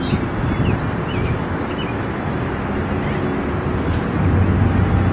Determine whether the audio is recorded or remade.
recorded